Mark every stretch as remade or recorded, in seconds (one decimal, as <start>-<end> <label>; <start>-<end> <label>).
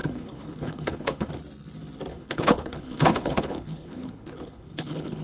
0.0-1.3 remade; 1.3-2.1 recorded; 2.1-5.2 remade